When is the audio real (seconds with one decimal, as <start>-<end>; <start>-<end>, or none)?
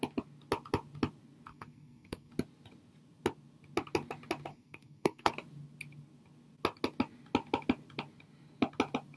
0.0-1.5; 2.3-4.5; 5.3-9.2